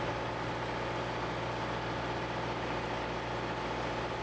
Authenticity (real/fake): real